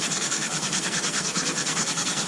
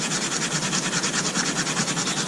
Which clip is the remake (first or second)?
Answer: first